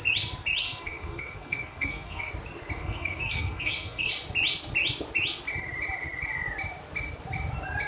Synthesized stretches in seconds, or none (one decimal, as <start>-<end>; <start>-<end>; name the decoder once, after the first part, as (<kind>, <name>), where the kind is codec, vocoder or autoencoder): 0.6-2.3 (codec, SNAC); 2.8-4.1